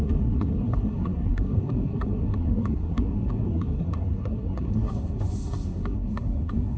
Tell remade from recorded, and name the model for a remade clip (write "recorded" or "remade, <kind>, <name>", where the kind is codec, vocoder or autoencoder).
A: remade, codec, SNAC